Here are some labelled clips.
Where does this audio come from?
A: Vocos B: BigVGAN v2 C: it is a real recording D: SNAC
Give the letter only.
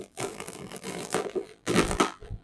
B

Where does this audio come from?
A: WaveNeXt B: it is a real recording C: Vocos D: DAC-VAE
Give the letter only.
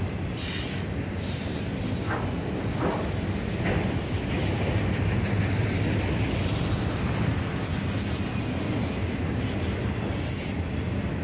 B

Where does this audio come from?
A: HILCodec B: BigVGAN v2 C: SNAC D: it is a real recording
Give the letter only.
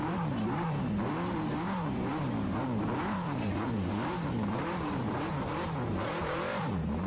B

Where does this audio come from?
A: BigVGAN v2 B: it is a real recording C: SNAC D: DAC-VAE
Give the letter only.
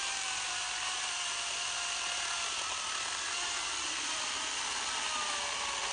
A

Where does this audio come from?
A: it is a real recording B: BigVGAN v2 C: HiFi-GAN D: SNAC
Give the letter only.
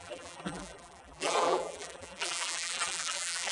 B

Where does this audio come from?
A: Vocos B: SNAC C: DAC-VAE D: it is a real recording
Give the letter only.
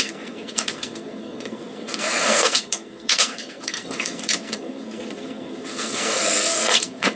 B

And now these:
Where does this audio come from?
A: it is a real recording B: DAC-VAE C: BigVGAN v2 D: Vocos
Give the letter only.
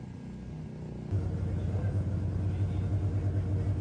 A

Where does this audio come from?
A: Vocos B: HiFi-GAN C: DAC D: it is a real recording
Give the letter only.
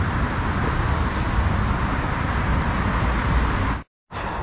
D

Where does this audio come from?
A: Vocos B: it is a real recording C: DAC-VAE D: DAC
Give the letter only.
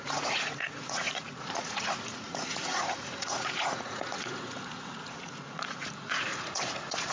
A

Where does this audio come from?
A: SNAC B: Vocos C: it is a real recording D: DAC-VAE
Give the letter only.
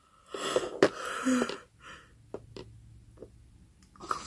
C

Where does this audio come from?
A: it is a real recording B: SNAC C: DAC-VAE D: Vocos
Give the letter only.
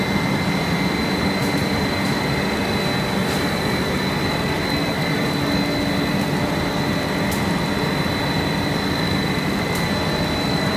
A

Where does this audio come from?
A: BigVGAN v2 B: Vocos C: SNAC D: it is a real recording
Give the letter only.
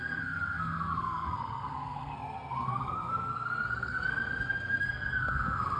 C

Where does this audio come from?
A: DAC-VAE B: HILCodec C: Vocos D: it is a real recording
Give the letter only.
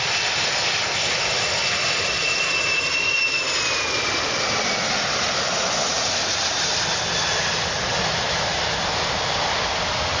D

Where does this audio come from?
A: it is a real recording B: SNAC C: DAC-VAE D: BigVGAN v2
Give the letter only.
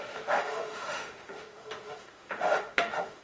C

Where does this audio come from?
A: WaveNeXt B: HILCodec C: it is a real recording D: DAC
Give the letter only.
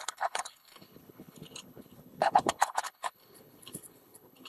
B